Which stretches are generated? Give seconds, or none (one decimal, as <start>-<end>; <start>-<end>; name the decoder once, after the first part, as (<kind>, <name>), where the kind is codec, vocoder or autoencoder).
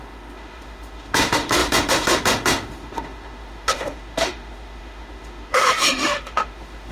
0.0-6.9 (autoencoder, DAC-VAE)